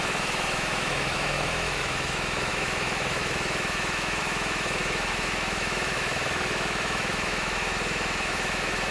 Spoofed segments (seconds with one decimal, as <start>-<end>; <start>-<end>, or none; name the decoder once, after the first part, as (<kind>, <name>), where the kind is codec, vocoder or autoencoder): 0.0-8.9 (autoencoder, DAC-VAE)